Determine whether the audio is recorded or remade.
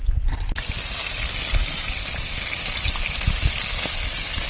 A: recorded